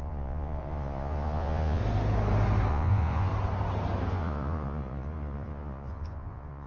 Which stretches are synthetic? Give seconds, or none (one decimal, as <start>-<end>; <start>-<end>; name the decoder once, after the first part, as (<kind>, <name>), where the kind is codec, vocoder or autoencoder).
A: 0.0-1.8 (vocoder, Vocos); 2.7-3.3; 4.1-6.7